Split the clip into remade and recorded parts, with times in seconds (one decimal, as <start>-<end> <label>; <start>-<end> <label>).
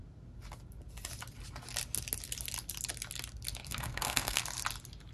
0.0-3.6 recorded; 3.6-4.4 remade; 4.4-5.1 recorded